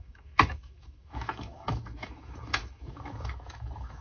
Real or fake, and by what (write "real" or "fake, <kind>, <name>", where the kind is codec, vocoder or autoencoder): fake, autoencoder, DAC-VAE